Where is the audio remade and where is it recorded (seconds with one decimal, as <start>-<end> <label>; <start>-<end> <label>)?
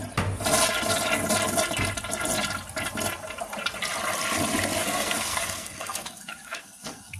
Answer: 0.0-4.8 recorded; 4.8-7.2 remade